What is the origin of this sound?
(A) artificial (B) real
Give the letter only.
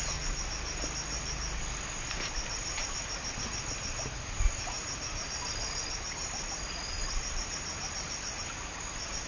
B